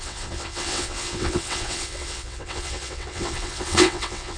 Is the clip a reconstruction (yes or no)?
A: yes